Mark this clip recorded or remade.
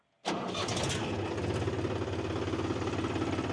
recorded